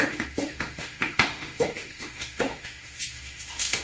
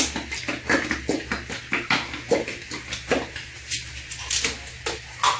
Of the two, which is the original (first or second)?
second